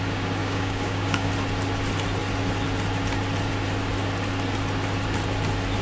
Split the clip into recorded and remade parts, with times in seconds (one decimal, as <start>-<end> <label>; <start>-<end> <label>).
0.0-0.4 recorded; 0.4-1.3 remade; 1.3-5.8 recorded